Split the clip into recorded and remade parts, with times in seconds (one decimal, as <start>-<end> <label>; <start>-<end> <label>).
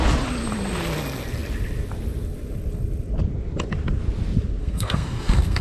0.0-4.6 recorded; 4.6-5.6 remade